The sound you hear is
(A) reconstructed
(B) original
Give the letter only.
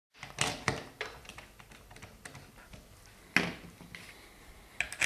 B